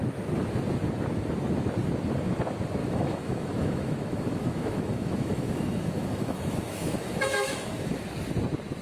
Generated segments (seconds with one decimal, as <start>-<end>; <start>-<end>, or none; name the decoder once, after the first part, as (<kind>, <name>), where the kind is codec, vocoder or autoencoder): 2.8-8.0 (autoencoder, DAC-VAE)